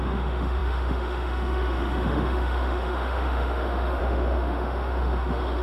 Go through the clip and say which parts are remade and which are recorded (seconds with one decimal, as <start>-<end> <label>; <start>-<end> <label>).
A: 0.0-5.6 remade